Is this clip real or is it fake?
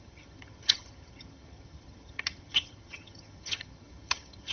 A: fake